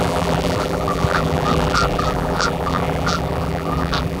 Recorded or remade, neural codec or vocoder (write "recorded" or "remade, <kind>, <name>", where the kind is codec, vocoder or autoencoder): remade, vocoder, BigVGAN v2